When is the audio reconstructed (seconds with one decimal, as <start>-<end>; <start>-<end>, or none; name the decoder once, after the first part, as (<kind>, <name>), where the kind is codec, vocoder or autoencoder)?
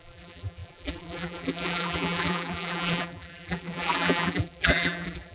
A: 0.0-5.3 (vocoder, BigVGAN v2)